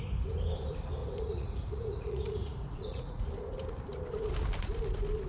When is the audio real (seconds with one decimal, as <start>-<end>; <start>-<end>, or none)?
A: 0.0-1.0; 3.3-5.3